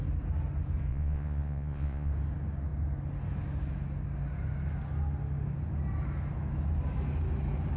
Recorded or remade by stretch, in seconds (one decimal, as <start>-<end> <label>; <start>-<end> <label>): 0.0-0.9 recorded; 0.9-2.1 remade; 2.1-7.8 recorded